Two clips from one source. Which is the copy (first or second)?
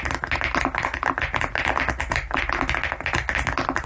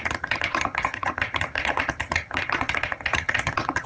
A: second